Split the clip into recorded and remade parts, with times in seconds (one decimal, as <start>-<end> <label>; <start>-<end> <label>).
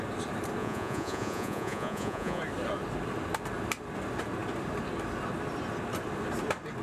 0.0-0.6 recorded; 0.6-2.4 remade; 2.4-6.8 recorded